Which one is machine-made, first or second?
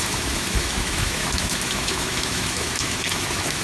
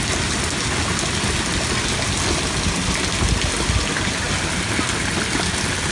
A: first